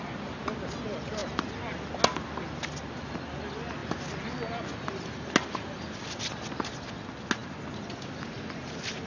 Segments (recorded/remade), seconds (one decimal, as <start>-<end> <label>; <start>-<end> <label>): 0.0-9.1 recorded